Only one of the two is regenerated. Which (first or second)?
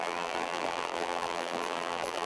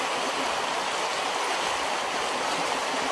first